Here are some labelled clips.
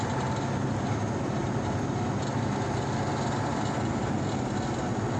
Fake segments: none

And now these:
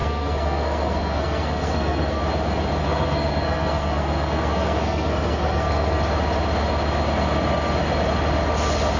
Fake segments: 0.0-2.2; 2.8-6.0

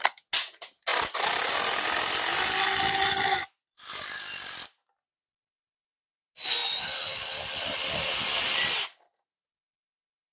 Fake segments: none

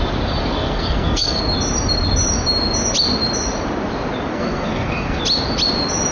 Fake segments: 0.4-1.4; 4.3-5.2

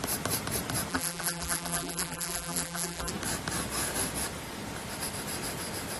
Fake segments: 0.9-3.1

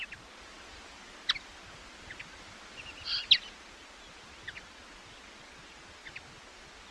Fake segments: none

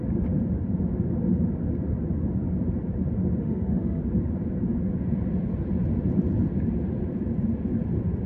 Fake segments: 3.4-4.0